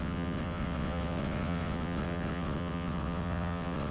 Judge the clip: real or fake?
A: fake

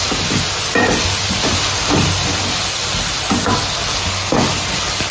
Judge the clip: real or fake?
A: real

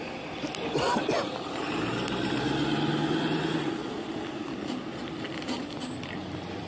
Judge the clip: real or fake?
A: real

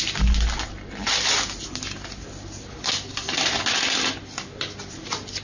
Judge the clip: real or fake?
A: real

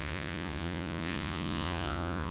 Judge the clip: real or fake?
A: fake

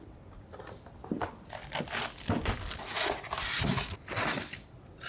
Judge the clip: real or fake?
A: real